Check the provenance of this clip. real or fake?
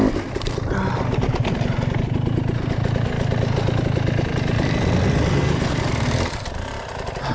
real